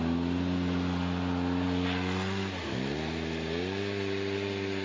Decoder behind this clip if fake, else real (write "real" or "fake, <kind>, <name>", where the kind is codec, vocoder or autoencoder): real